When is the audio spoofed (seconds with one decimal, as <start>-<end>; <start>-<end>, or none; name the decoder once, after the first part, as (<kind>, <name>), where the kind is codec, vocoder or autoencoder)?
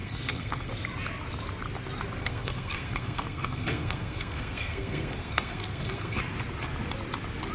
0.0-0.7 (codec, SNAC); 2.2-6.2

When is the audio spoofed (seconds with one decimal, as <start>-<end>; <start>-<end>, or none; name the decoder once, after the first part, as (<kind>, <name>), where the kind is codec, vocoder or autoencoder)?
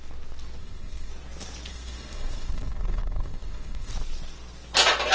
0.6-1.1 (codec, SNAC); 1.7-3.9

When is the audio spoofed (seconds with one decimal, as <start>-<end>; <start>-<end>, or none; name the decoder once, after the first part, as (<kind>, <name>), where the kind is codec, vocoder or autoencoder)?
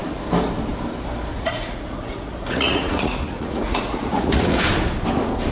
1.3-4.6 (vocoder, Vocos)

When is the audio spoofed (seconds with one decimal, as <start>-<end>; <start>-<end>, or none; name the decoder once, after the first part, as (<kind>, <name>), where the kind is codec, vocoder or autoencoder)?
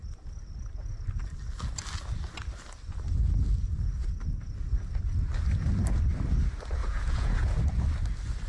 6.8-7.6 (vocoder, Vocos)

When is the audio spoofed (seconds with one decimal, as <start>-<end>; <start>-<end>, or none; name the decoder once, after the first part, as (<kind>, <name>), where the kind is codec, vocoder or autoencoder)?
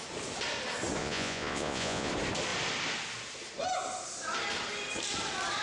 1.0-2.1 (vocoder, Vocos)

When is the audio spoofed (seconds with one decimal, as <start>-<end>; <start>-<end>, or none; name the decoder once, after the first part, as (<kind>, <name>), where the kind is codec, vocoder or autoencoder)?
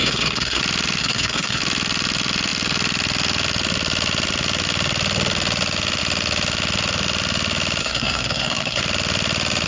0.0-0.6 (codec, SNAC); 1.0-1.6; 7.8-8.8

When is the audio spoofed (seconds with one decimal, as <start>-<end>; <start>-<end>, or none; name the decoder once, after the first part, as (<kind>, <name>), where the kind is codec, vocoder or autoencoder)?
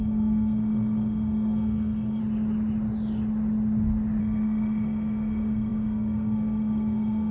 0.0-2.2 (codec, SNAC); 4.2-7.3